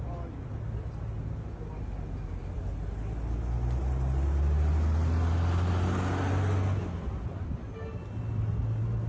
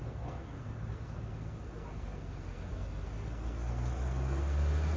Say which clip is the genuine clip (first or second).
first